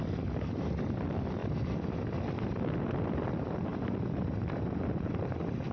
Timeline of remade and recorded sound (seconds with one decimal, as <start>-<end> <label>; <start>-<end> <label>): 0.0-3.7 recorded; 3.7-4.9 remade; 4.9-5.7 recorded